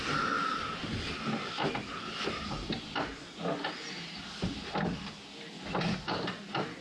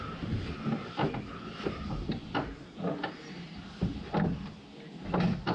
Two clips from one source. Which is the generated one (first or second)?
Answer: second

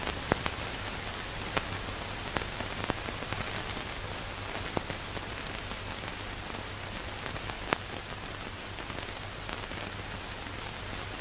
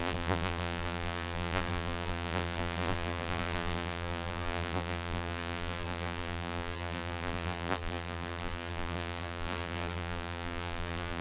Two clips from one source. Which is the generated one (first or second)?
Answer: second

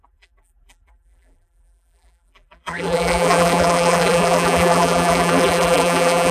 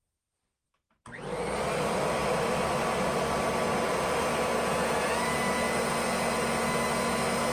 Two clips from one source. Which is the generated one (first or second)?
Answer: first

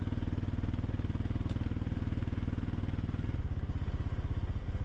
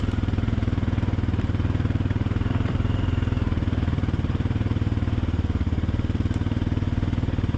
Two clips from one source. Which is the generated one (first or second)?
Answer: second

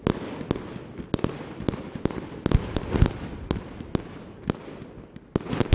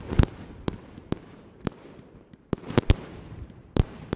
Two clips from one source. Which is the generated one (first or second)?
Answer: second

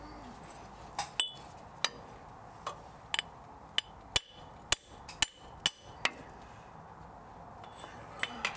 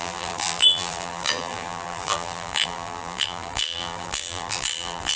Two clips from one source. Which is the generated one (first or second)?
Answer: second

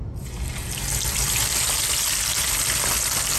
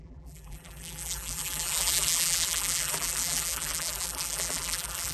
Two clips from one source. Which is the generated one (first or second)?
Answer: second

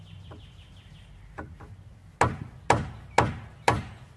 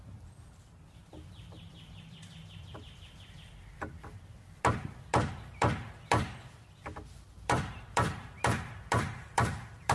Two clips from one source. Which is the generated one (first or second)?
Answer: second